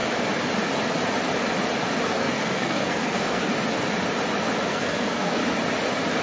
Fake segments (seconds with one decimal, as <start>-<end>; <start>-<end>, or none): 2.1-3.5; 4.7-5.4